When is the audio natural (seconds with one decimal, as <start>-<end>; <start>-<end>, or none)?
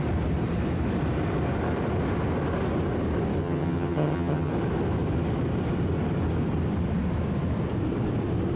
0.0-3.4; 4.5-8.6